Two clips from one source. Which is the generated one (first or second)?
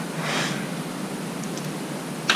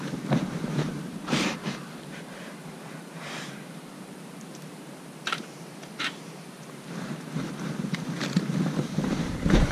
second